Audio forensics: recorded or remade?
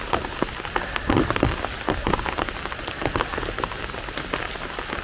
recorded